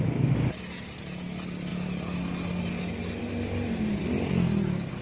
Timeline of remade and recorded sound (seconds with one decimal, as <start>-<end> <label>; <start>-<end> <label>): 0.0-5.0 recorded